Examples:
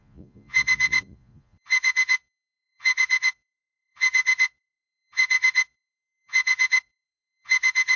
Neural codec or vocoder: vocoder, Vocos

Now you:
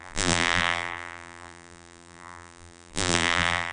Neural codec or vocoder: vocoder, BigVGAN v2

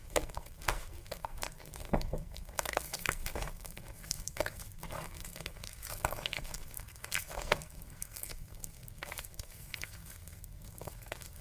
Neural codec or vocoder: codec, SNAC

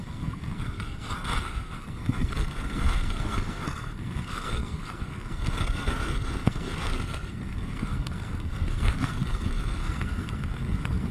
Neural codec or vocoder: codec, SNAC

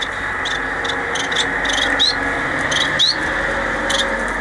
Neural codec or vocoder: none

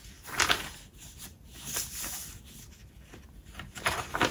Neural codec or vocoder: none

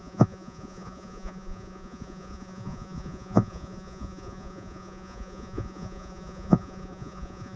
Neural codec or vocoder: vocoder, Vocos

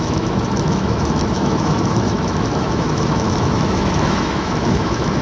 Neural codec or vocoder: autoencoder, DAC-VAE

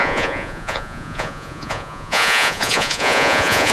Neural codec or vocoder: vocoder, Vocos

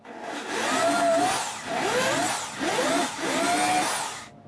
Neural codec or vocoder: none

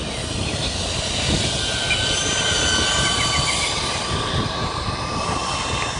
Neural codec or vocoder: none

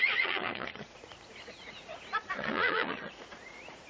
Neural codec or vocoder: vocoder, Vocos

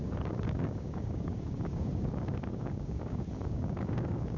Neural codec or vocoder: codec, DAC